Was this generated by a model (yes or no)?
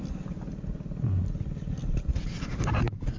no